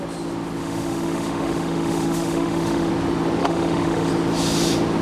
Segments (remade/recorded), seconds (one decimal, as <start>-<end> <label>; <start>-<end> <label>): 0.0-0.6 recorded; 0.6-2.9 remade; 2.9-3.4 recorded; 3.4-4.1 remade; 4.1-5.0 recorded